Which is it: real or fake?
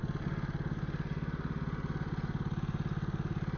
real